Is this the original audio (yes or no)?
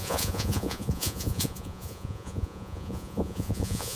no